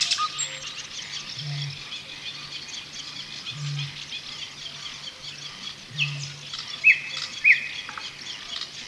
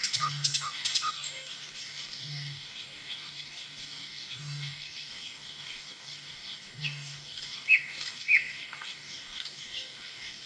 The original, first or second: first